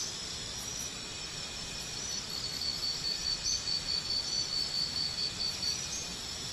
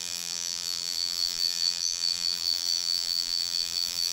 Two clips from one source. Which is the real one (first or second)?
first